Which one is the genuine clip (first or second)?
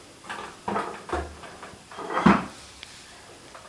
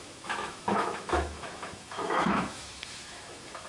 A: first